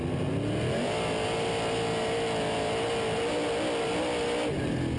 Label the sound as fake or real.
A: real